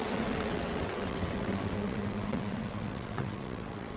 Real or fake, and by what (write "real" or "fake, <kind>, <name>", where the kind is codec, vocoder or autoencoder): fake, vocoder, WaveNeXt